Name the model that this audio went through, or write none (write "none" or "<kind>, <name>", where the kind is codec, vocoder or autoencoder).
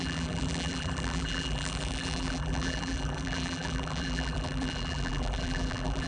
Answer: vocoder, BigVGAN v2